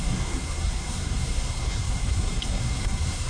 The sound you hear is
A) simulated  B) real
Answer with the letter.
A